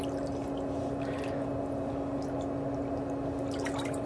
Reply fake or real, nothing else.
real